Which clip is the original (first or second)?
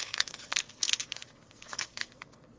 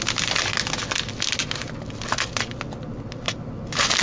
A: second